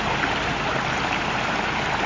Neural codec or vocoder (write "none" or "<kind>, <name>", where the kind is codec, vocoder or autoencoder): none